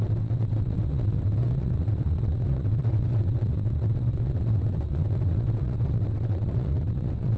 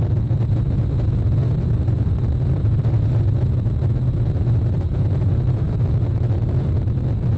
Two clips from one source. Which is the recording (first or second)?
second